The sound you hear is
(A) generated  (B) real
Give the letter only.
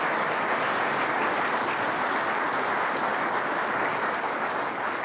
B